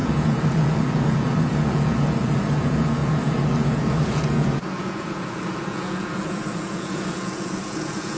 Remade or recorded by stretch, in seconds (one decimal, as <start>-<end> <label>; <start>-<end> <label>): 0.0-8.2 remade